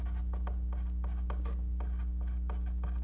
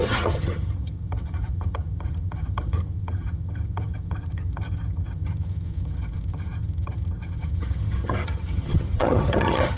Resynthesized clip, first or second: second